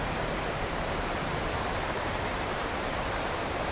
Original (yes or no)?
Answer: no